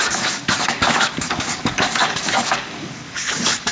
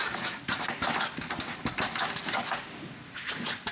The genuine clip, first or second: second